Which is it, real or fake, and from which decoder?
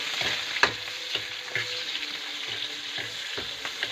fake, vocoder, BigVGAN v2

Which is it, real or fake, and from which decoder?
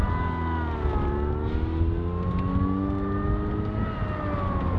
real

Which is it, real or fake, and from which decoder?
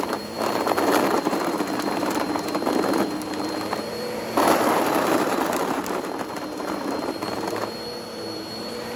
fake, vocoder, BigVGAN v2